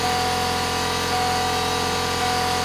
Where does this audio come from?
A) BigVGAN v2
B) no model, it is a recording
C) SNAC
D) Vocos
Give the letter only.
B